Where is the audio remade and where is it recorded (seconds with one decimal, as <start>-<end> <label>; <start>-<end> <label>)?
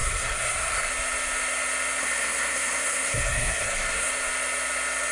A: 0.0-0.9 remade; 0.9-2.0 recorded; 2.0-4.1 remade; 4.1-5.1 recorded